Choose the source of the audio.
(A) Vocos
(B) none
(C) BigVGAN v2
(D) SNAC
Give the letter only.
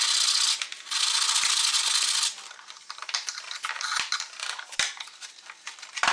B